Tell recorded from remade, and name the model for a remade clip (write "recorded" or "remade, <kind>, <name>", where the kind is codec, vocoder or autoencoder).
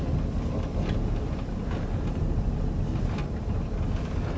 recorded